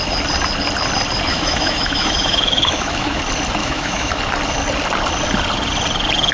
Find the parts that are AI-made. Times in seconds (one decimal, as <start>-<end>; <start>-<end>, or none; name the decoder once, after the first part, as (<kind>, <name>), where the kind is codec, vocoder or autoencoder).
1.3-3.2 (autoencoder, DAC-VAE); 3.6-4.2